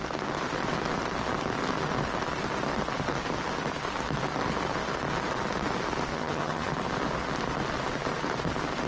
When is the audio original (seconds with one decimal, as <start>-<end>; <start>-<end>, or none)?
0.0-6.1; 6.7-8.9